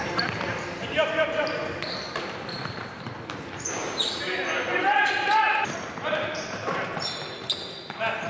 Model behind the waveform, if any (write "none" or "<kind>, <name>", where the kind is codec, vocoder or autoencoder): vocoder, BigVGAN v2